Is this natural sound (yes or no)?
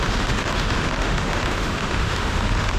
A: no